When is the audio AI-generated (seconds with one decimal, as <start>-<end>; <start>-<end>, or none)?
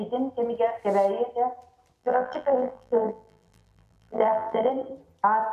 2.0-4.7